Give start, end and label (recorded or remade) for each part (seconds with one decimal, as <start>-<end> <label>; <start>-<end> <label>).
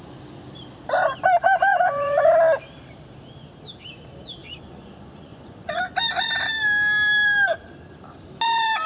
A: 0.0-1.7 recorded; 1.7-2.3 remade; 2.3-4.4 recorded; 4.4-5.8 remade; 5.8-8.9 recorded